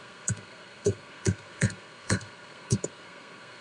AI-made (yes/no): yes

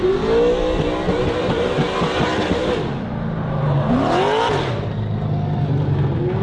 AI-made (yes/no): no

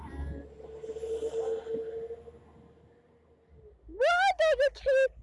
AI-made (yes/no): no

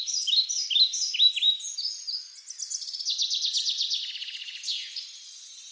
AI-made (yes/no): no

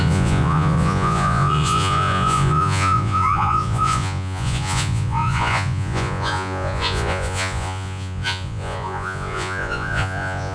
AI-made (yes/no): yes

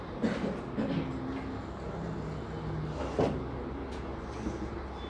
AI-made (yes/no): no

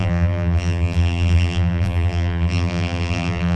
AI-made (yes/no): yes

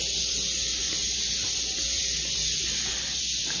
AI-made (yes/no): no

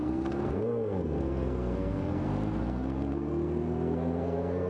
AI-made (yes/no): yes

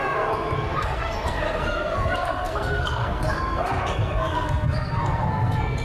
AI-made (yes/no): yes